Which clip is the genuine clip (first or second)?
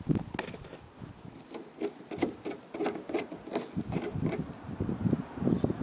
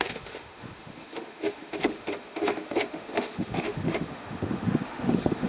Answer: first